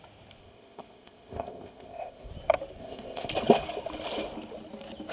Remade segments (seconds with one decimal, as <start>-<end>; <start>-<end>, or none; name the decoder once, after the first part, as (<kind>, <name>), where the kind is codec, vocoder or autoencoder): 0.4-2.3 (codec, ZipCodec); 2.8-3.3